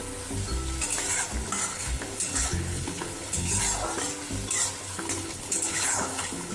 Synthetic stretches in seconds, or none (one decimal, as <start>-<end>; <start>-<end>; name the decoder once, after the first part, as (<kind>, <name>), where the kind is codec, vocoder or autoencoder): 1.7-3.6 (codec, HILCodec); 4.9-6.5